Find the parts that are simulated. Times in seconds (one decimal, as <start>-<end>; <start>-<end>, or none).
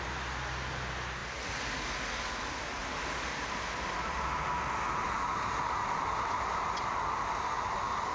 2.8-6.9